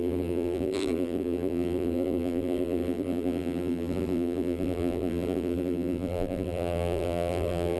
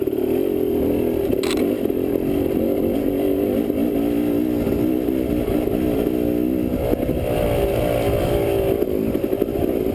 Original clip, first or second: second